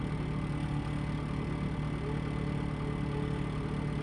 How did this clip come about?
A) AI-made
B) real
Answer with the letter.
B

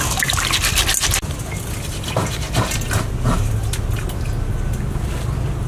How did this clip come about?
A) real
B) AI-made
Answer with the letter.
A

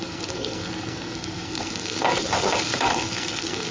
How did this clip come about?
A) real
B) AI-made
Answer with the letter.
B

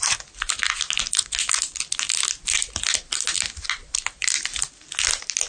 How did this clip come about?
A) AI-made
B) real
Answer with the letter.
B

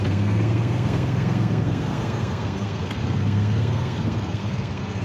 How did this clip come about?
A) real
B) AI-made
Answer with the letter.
B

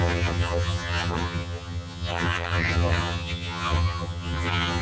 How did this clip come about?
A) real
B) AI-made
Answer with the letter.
B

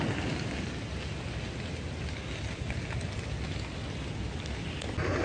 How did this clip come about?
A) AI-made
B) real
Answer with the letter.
B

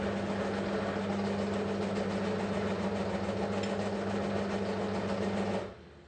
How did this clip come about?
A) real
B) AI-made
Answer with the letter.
A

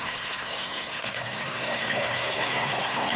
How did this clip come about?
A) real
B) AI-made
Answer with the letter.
B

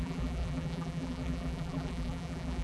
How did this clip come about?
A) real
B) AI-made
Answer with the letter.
B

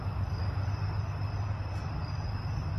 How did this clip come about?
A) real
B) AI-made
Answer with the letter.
A